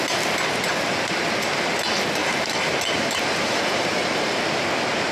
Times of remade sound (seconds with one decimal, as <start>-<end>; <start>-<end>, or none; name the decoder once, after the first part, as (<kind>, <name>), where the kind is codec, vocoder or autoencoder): 2.2-4.4 (vocoder, BigVGAN v2)